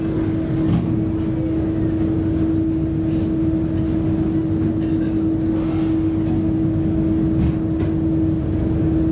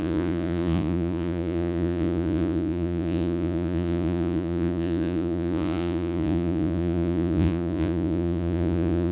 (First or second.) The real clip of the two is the first